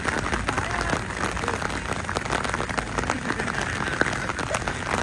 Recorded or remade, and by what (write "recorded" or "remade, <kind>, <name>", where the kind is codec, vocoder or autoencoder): recorded